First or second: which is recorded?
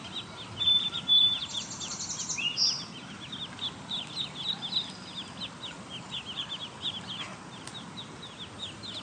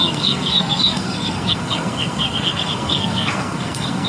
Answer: first